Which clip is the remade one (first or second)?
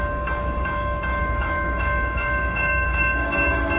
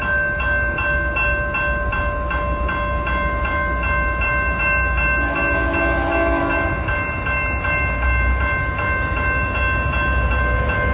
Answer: first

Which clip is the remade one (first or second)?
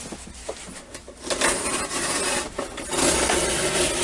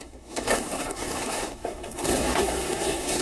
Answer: second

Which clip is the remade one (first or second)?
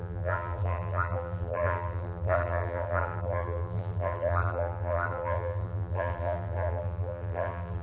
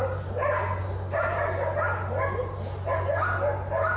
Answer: first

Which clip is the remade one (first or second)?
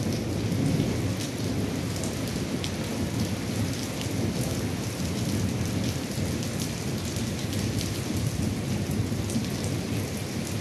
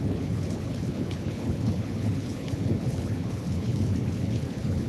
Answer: second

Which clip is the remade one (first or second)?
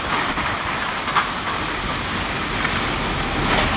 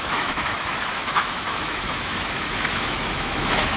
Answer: second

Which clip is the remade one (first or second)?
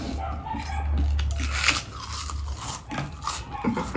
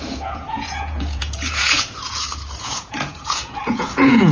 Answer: second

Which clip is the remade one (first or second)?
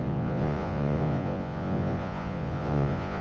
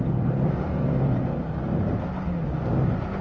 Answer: first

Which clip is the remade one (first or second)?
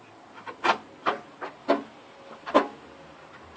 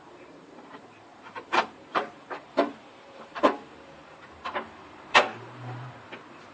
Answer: second